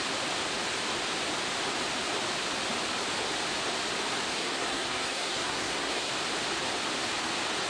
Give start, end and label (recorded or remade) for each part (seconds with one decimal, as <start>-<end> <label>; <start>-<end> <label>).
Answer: 0.0-4.3 recorded; 4.3-6.1 remade; 6.1-7.7 recorded